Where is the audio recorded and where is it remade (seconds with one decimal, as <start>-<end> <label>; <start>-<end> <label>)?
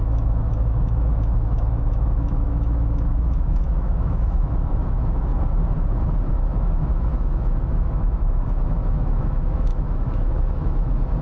0.0-5.3 remade; 5.3-6.3 recorded; 6.3-11.2 remade